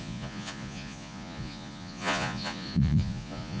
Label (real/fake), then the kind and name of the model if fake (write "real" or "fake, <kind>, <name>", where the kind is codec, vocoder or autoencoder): fake, vocoder, Vocos